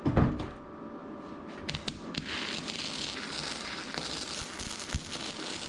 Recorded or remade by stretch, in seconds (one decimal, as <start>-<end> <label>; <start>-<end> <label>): 0.0-5.7 recorded

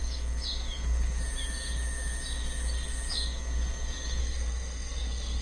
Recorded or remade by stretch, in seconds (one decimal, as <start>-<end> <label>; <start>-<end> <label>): 0.0-4.2 recorded; 4.2-5.4 remade

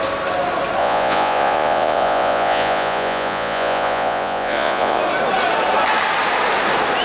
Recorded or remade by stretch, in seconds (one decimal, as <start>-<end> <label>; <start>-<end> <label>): 0.0-0.8 recorded; 0.8-5.0 remade; 5.0-7.0 recorded

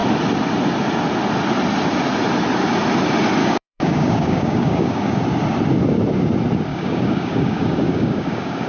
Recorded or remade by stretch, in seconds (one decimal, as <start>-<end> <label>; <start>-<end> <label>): 0.0-3.4 recorded; 3.4-5.2 remade; 5.2-6.7 recorded; 6.7-8.7 remade

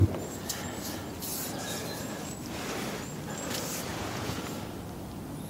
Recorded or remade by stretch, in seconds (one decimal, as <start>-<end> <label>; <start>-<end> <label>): 0.0-3.9 recorded; 3.9-4.4 remade; 4.4-5.5 recorded

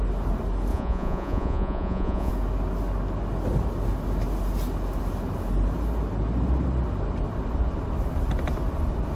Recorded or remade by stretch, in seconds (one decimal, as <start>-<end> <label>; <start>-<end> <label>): 0.0-0.7 recorded; 0.7-2.3 remade; 2.3-9.1 recorded

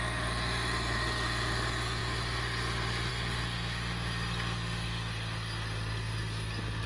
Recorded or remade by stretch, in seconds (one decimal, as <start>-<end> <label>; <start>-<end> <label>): 0.0-6.9 recorded

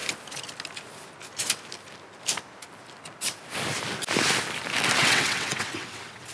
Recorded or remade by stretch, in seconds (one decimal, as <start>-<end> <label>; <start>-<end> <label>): 0.0-5.0 recorded; 5.0-6.3 remade